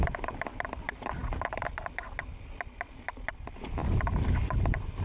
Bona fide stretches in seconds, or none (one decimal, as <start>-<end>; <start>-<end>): 0.0-5.0